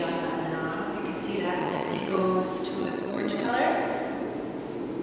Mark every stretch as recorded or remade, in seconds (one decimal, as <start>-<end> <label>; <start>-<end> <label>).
0.0-1.6 recorded; 1.6-2.2 remade; 2.2-2.8 recorded; 2.8-3.5 remade; 3.5-5.0 recorded

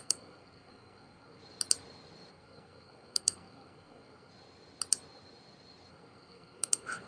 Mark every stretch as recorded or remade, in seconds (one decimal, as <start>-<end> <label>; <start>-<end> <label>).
0.0-1.4 remade; 1.4-2.3 recorded; 2.3-4.3 remade; 4.3-5.9 recorded; 5.9-7.1 remade

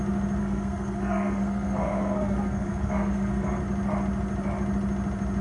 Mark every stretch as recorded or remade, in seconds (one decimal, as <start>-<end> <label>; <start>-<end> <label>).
0.0-0.4 recorded; 0.4-3.6 remade; 3.6-5.4 recorded

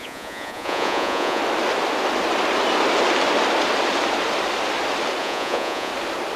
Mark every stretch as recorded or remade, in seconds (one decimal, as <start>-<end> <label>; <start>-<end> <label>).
0.0-1.4 remade; 1.4-5.2 recorded; 5.2-5.9 remade; 5.9-6.4 recorded

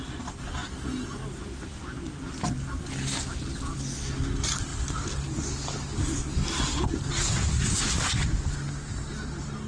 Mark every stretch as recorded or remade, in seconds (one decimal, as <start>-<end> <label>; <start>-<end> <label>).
0.0-9.7 recorded